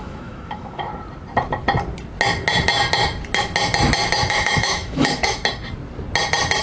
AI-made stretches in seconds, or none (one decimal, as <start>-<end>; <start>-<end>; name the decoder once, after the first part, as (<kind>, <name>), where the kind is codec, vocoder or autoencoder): 0.0-0.9 (autoencoder, DAC-VAE); 4.3-5.4